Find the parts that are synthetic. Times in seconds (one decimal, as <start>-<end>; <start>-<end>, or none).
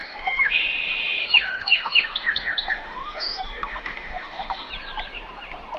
0.0-0.5; 1.2-4.7